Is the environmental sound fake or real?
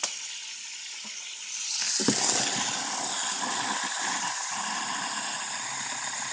real